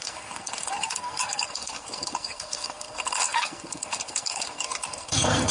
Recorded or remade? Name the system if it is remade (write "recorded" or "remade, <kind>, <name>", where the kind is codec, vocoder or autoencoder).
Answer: remade, codec, SNAC